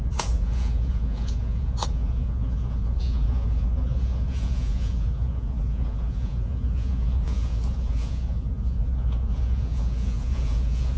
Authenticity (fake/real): fake